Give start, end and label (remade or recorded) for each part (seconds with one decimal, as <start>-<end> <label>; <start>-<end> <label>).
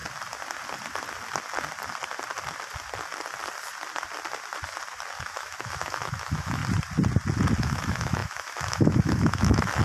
0.0-5.2 recorded; 5.2-6.6 remade; 6.6-7.6 recorded; 7.6-9.8 remade